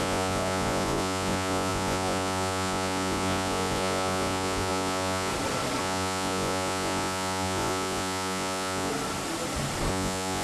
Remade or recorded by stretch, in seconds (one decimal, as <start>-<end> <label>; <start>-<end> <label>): 0.0-5.3 remade; 5.3-5.8 recorded; 5.8-8.9 remade; 8.9-9.9 recorded; 9.9-10.4 remade